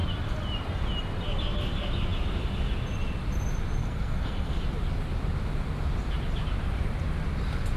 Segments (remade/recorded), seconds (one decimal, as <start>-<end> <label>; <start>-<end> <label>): 0.0-3.8 recorded; 3.8-4.6 remade; 4.6-7.8 recorded